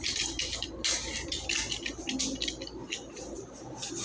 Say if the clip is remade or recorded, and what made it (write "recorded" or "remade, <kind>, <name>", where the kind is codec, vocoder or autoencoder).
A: recorded